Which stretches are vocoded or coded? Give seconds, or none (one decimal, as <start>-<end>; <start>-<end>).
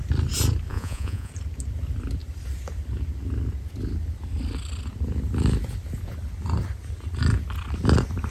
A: 0.7-1.3